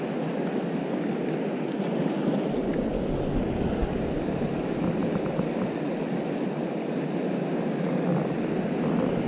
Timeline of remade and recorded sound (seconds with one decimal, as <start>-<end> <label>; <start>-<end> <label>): 0.0-9.3 recorded